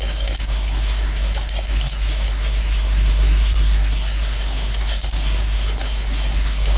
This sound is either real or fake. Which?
fake